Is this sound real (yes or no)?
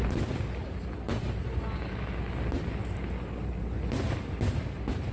yes